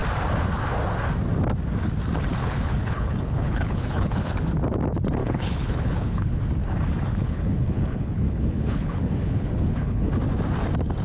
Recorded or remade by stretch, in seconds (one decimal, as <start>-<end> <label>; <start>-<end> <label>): 0.0-2.4 recorded; 2.4-4.4 remade; 4.4-5.2 recorded; 5.2-6.4 remade; 6.4-7.2 recorded; 7.2-10.1 remade; 10.1-11.0 recorded